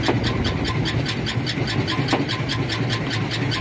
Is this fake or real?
real